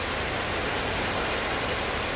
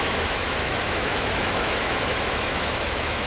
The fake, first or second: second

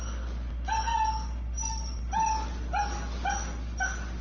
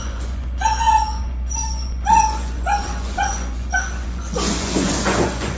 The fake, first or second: second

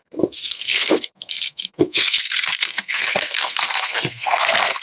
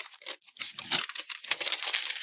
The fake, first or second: first